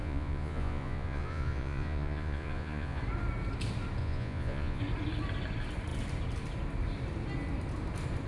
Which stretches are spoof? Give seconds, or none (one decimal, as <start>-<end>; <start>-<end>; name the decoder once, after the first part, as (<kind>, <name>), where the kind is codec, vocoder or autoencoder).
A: 0.0-3.0 (vocoder, Vocos); 4.0-4.8